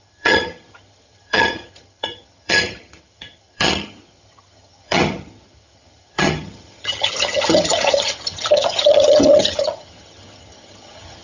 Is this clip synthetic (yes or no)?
yes